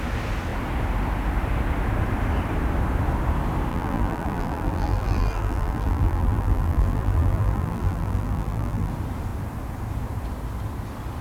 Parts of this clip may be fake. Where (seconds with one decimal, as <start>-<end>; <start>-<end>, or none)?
3.7-8.9